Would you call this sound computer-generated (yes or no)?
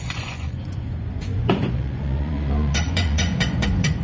yes